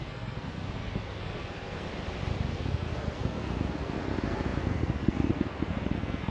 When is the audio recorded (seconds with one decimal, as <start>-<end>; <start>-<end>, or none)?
1.9-2.5